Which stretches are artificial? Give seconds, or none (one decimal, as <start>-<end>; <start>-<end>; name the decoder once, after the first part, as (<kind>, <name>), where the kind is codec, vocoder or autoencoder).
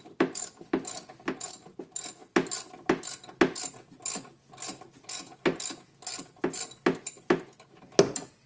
none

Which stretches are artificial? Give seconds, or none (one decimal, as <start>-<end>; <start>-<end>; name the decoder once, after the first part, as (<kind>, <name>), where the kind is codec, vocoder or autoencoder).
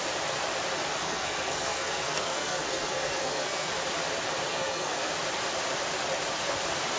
1.0-3.7 (codec, SNAC); 4.5-5.1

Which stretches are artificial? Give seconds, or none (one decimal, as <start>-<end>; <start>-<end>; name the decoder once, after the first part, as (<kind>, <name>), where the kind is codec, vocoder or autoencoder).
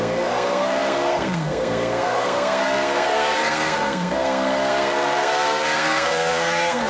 0.0-6.9 (codec, SNAC)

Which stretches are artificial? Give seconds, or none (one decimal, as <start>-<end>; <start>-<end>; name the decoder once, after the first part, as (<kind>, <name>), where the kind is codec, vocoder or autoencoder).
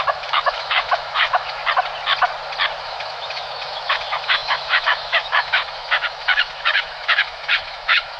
0.0-1.6 (autoencoder, DAC-VAE); 2.8-8.2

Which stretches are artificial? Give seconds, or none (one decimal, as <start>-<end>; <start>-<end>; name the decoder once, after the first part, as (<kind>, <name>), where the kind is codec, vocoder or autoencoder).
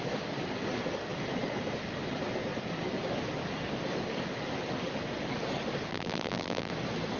5.9-6.7 (vocoder, BigVGAN v2)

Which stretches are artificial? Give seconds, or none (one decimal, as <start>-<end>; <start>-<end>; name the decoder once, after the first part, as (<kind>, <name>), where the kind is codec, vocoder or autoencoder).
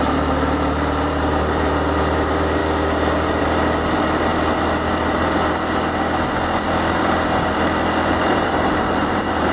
0.0-2.6 (vocoder, BigVGAN v2); 3.4-4.3; 8.1-9.5